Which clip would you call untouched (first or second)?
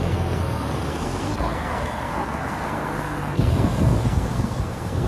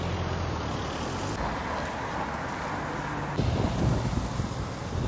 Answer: second